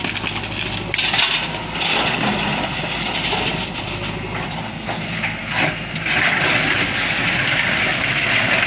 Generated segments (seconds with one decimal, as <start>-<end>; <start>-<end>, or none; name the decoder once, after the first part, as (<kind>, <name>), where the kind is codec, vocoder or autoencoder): none